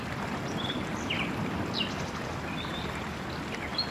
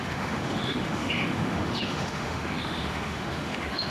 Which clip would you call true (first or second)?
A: first